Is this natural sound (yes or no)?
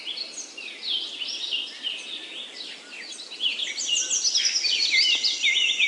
yes